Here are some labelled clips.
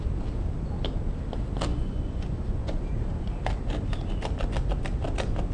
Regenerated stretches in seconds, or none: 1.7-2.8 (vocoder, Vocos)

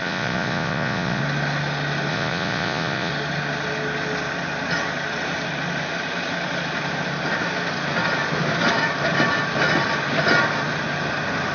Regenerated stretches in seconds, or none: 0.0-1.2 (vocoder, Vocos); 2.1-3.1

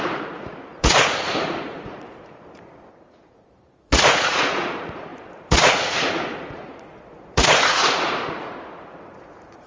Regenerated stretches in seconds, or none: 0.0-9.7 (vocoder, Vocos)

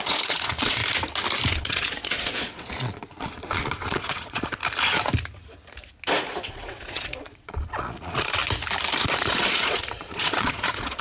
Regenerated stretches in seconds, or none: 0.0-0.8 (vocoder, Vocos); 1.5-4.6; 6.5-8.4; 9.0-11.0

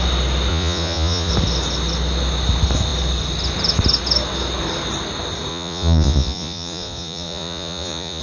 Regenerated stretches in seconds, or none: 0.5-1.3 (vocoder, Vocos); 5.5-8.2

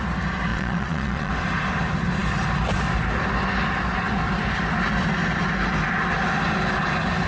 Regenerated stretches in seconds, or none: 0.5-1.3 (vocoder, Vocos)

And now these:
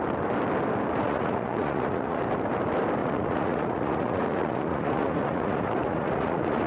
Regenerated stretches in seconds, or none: 1.0-2.2 (vocoder, Vocos); 3.0-6.7